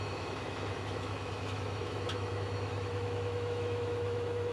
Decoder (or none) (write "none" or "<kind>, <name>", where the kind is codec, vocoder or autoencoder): autoencoder, DAC-VAE